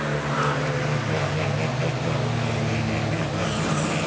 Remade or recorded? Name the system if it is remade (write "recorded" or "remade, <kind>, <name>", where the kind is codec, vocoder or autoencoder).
recorded